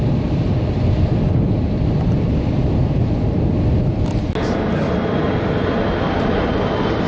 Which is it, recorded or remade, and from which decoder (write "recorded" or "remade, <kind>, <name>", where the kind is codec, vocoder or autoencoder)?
recorded